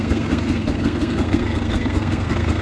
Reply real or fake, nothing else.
fake